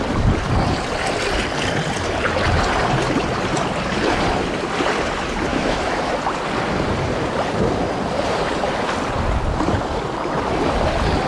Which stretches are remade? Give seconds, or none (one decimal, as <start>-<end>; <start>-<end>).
5.5-6.1